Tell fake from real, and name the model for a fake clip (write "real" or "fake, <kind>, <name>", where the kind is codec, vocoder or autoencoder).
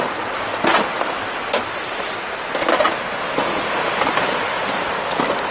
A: real